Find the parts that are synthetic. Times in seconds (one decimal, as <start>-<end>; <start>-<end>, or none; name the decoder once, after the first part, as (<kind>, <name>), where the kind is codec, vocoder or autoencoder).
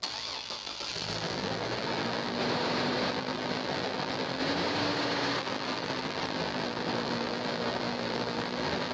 0.0-2.4 (vocoder, BigVGAN v2); 3.1-4.4; 5.4-8.9